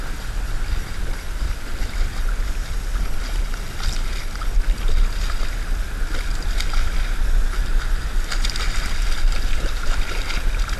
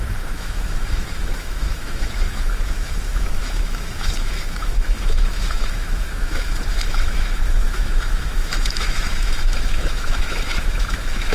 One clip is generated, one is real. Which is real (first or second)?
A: first